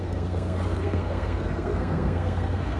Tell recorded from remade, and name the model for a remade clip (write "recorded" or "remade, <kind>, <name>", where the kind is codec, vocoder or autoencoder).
remade, codec, SNAC